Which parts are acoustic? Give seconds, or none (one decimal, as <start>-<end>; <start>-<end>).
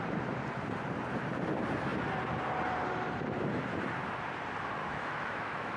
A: 0.0-4.8